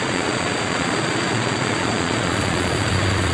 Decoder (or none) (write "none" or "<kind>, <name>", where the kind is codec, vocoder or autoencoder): vocoder, Vocos